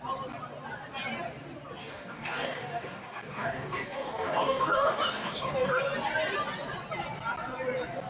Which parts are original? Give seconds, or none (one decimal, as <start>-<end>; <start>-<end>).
0.0-1.8; 5.8-8.1